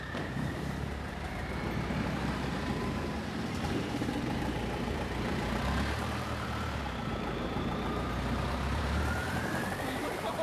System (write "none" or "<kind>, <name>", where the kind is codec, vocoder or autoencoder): vocoder, BigVGAN v2